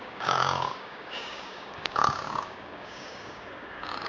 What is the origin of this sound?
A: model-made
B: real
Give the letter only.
A